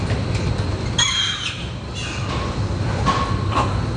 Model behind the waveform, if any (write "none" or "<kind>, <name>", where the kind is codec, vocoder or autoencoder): none